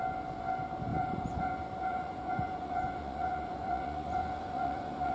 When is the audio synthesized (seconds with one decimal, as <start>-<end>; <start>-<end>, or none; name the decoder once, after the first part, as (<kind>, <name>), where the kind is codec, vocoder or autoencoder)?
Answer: 0.9-1.5 (vocoder, Vocos); 1.9-5.1